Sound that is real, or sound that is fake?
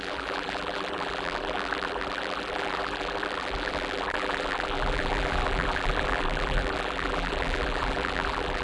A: fake